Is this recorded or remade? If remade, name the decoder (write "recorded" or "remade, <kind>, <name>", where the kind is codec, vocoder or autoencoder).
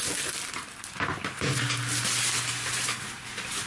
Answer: recorded